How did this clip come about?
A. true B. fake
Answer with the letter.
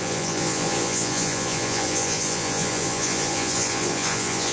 B